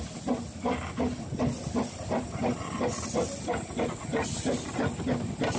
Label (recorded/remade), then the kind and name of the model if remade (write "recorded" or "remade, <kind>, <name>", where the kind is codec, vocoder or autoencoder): recorded